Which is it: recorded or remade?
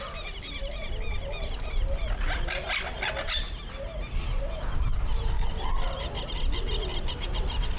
recorded